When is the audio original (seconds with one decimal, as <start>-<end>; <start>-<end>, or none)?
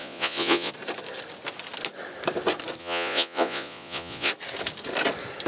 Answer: 0.7-2.8; 4.3-5.5